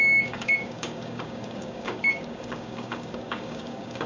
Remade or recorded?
remade